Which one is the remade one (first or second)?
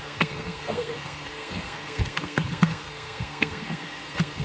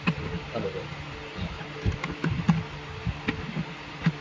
first